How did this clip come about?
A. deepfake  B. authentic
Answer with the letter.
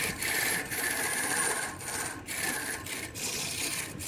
B